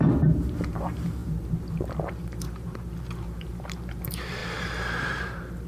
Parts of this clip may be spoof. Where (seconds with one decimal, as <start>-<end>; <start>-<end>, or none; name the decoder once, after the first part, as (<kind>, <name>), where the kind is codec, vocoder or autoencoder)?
0.0-5.7 (vocoder, BigVGAN v2)